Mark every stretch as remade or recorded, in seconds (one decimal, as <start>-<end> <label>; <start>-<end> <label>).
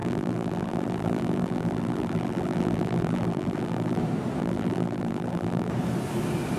0.0-4.0 remade; 4.0-4.4 recorded; 4.4-5.7 remade; 5.7-6.6 recorded